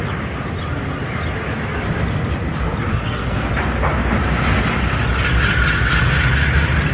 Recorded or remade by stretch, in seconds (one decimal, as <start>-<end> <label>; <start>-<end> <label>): 0.0-2.9 recorded; 2.9-3.5 remade; 3.5-6.9 recorded